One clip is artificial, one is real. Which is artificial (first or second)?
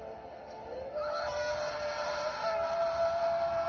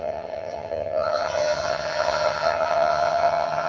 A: second